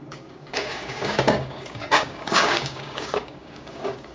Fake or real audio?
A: fake